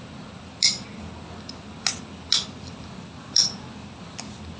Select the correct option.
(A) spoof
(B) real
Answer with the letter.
B